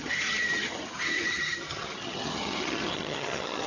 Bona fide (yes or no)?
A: no